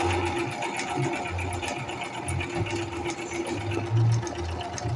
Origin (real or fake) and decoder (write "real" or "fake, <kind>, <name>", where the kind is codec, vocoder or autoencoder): real